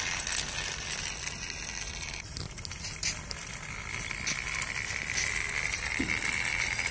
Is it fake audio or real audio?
real